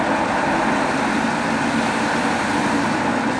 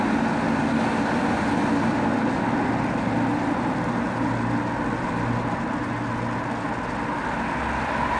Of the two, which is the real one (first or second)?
second